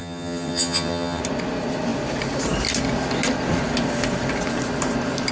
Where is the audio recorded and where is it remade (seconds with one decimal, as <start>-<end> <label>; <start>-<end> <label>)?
0.0-1.2 remade; 1.2-5.3 recorded